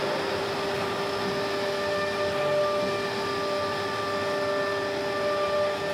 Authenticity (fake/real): real